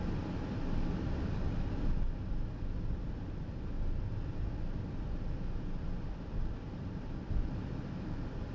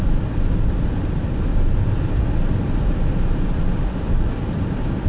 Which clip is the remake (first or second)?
second